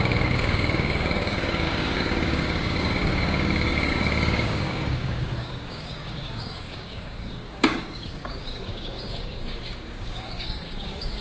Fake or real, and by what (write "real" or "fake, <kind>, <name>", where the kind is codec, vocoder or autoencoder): fake, codec, DAC